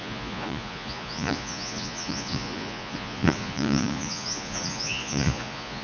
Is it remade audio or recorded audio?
remade